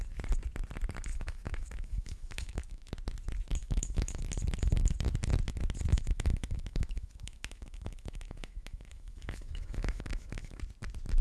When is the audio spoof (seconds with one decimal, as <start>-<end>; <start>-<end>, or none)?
1.1-2.9; 3.6-4.2; 5.9-10.6